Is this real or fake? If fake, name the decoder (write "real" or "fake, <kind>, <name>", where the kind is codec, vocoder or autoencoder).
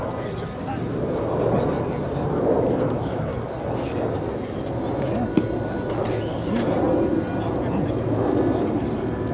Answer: real